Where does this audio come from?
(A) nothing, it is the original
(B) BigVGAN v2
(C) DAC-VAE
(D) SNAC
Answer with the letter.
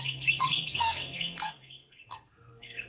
D